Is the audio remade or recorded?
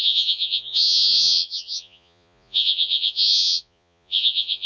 remade